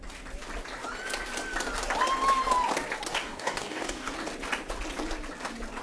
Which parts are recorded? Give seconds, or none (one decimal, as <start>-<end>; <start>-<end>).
0.0-3.1; 4.1-5.8